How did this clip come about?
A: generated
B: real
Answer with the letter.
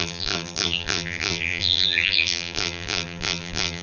A